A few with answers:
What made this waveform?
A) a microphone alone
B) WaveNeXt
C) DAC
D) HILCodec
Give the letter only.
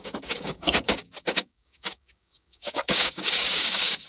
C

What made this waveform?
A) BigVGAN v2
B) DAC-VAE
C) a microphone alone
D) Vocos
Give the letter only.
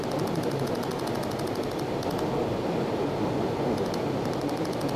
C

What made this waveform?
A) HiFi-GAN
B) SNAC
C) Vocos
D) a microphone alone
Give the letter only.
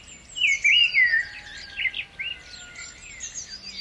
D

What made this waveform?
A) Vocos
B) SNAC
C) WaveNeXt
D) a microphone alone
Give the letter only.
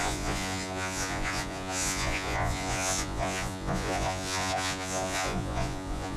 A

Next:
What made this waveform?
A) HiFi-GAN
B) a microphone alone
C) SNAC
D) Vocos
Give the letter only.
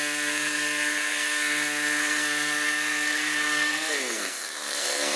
C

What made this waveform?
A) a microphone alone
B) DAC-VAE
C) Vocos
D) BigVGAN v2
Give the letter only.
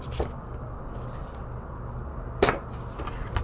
A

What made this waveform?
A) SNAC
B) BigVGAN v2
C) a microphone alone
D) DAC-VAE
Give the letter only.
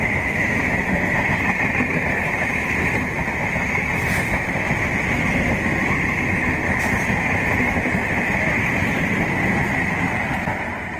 C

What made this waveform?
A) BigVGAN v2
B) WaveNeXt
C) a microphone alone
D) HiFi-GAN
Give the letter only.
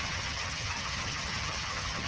D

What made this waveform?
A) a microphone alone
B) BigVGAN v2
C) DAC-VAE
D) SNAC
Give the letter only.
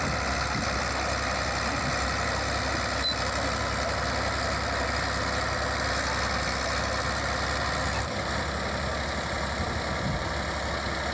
A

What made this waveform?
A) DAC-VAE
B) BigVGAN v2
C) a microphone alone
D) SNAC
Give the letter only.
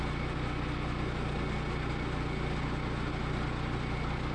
C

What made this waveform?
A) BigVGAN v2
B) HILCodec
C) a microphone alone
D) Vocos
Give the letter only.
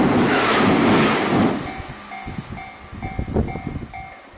C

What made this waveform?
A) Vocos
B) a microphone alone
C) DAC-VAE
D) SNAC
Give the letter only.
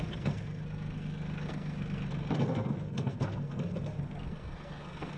D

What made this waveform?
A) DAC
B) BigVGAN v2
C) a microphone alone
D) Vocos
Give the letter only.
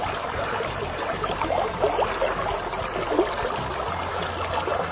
C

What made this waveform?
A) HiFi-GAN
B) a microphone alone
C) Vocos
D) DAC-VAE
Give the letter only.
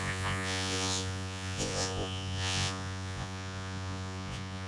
C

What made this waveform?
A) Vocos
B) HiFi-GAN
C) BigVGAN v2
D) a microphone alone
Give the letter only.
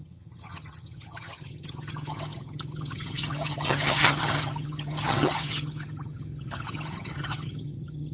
B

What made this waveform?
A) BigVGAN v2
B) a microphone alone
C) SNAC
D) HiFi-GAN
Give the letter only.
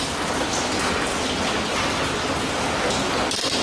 B